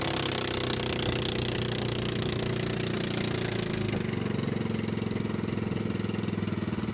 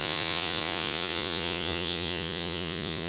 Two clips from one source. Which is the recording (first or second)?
first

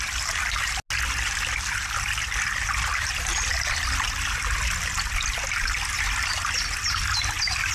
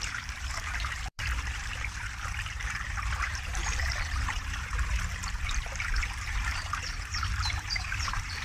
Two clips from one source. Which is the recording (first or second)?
first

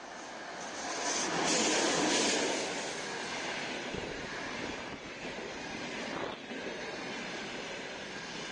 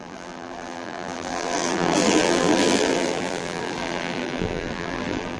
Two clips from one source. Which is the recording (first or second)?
first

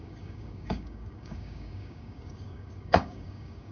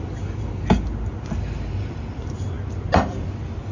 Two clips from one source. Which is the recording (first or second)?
second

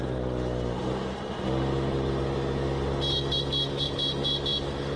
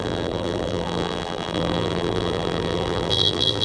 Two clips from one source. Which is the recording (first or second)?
first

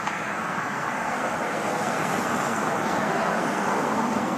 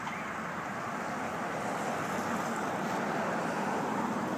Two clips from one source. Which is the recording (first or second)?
second